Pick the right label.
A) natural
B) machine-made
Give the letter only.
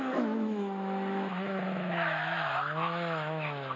B